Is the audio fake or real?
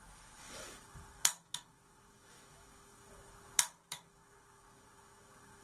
fake